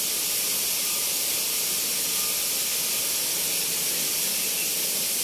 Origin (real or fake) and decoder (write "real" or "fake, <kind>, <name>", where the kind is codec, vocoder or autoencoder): real